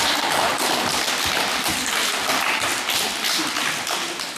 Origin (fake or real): real